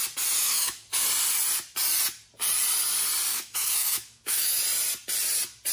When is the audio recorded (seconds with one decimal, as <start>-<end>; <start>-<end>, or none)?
0.0-0.4; 0.9-3.3; 4.6-5.7